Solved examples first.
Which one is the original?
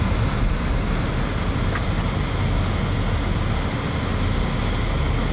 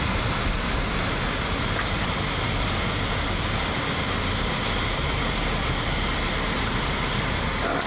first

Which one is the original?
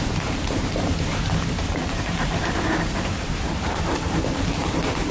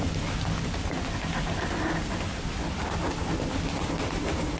second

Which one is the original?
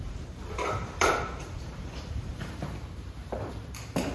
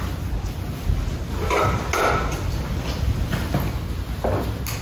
second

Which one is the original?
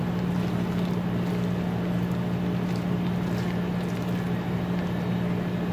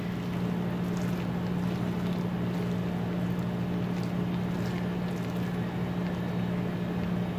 second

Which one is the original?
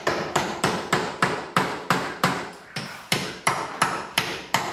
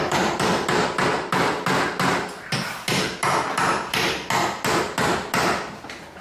second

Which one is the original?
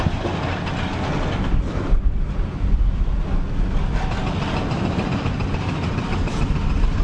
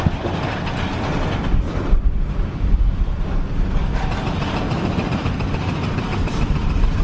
first